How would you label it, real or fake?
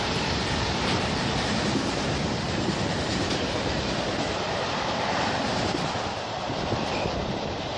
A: fake